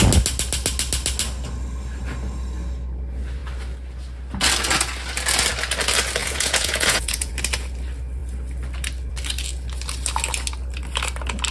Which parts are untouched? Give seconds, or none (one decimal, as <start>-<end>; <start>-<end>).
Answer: 0.0-6.2; 7.3-11.5

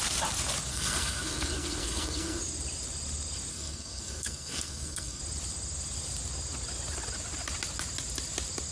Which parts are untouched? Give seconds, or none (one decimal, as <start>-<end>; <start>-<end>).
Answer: 0.0-0.7; 2.4-3.5; 5.2-8.7